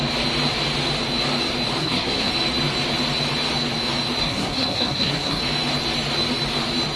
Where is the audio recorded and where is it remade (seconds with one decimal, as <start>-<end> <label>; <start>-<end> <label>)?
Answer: 0.0-1.8 recorded; 1.8-2.3 remade; 2.3-4.2 recorded; 4.2-5.4 remade; 5.4-7.0 recorded